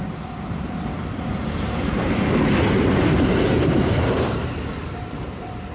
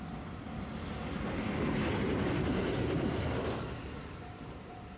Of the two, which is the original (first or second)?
second